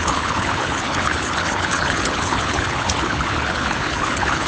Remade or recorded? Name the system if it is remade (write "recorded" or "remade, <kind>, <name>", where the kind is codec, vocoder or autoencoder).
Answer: remade, codec, HILCodec